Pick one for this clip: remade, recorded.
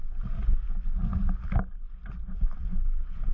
recorded